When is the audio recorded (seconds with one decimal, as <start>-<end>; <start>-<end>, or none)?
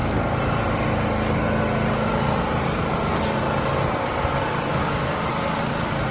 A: 0.0-4.7; 5.3-6.1